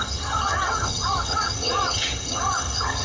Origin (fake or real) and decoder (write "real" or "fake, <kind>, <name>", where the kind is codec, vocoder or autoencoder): fake, vocoder, HiFi-GAN